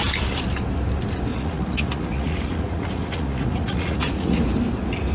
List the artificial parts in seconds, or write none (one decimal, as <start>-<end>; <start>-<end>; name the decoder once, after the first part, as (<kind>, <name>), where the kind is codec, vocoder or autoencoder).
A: 1.3-4.4 (vocoder, Vocos)